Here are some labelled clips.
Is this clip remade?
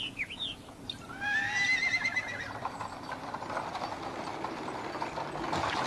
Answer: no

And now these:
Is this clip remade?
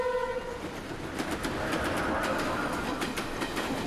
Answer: no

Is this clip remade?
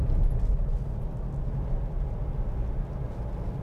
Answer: no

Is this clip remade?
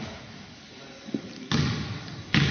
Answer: no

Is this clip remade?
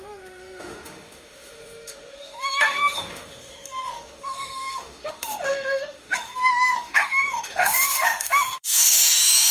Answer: yes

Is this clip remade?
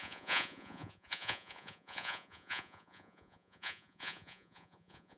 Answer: yes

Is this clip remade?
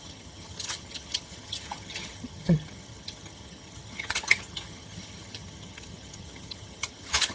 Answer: yes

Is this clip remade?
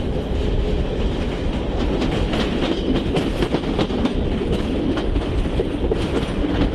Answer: no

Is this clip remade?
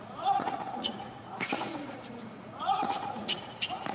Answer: yes